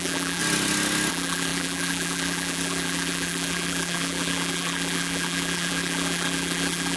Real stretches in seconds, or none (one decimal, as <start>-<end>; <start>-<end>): 0.4-1.1